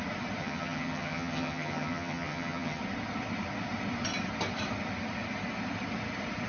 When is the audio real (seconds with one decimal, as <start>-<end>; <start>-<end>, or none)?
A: 0.0-0.4; 2.8-6.5